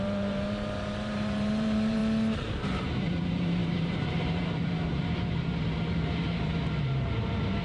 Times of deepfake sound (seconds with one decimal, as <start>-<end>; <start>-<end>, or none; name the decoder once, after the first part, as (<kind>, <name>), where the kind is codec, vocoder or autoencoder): 0.0-2.0 (vocoder, BigVGAN v2); 2.8-7.6